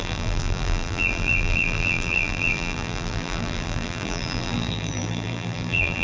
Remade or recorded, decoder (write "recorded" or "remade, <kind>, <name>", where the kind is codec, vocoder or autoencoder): remade, vocoder, BigVGAN v2